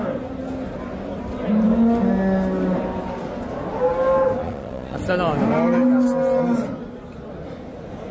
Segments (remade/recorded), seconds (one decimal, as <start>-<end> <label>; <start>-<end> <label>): 0.0-4.4 recorded; 4.4-5.0 remade; 5.0-8.1 recorded